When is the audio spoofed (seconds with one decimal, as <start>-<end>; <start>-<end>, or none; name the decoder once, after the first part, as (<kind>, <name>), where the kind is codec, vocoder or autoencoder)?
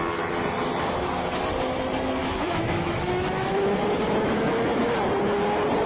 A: 2.2-4.9 (autoencoder, DAC-VAE)